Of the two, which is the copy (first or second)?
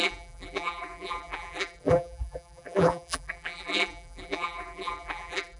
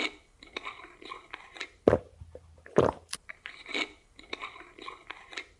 first